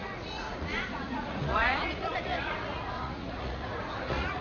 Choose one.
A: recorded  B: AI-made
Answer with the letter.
B